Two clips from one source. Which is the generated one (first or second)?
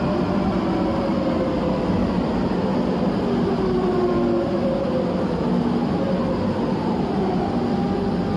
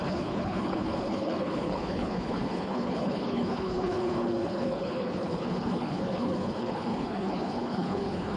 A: second